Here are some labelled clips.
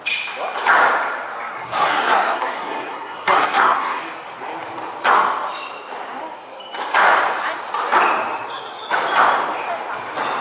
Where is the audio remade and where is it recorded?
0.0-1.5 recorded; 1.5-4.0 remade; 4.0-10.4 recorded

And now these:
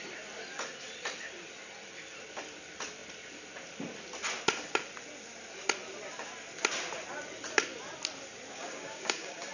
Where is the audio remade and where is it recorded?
0.0-8.5 recorded; 8.5-9.5 remade